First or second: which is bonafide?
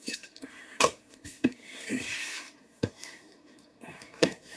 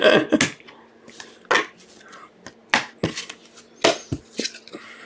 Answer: second